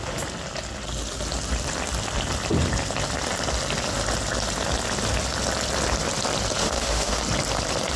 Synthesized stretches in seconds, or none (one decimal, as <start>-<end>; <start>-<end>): 6.6-7.2